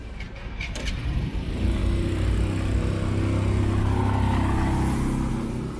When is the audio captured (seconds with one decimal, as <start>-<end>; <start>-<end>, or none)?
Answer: 1.8-5.3